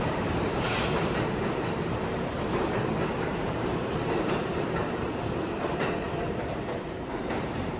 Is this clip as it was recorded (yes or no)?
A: no